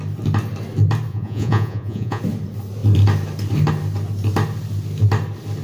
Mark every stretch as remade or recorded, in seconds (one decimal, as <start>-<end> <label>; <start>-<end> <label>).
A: 0.0-1.1 recorded; 1.1-2.2 remade; 2.2-5.6 recorded